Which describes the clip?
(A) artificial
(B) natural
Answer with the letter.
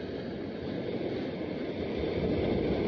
B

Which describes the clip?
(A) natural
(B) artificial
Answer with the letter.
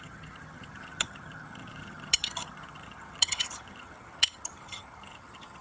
B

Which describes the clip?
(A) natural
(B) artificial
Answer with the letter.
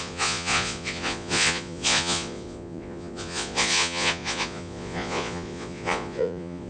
B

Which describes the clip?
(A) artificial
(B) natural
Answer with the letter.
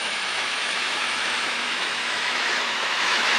A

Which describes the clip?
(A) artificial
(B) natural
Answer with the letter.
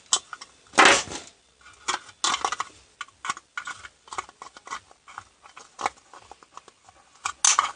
B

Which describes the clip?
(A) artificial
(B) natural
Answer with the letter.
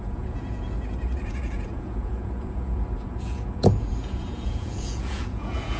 A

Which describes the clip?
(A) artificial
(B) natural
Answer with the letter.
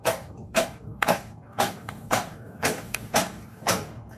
A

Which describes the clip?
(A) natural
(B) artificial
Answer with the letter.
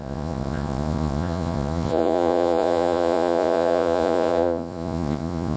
B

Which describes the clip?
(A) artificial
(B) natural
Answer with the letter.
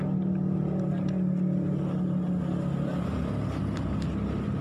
B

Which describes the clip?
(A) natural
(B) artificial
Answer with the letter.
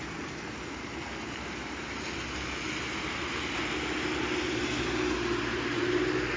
A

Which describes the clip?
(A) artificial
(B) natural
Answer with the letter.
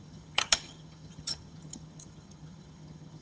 A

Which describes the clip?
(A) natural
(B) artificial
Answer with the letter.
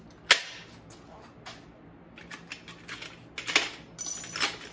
A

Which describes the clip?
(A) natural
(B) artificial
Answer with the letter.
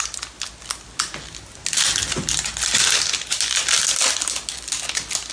A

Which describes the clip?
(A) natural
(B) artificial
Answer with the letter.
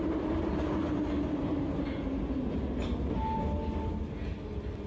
A